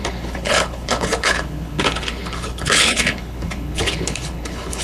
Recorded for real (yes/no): no